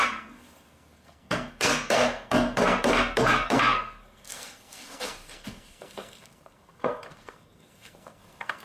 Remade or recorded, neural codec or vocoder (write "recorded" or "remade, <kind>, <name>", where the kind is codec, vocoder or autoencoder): remade, codec, SNAC